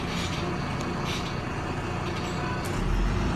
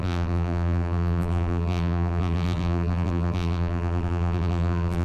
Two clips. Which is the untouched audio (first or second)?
first